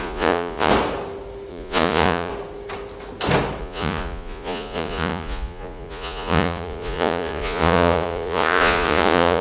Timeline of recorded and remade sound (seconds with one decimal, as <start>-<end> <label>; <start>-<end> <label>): 0.0-0.7 remade; 0.7-1.5 recorded; 1.5-2.3 remade; 2.3-3.6 recorded; 3.6-9.4 remade